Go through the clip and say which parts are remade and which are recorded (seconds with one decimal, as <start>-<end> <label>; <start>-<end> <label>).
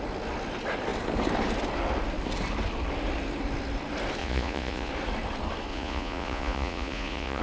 0.0-4.2 recorded; 4.2-4.9 remade; 4.9-5.7 recorded; 5.7-7.4 remade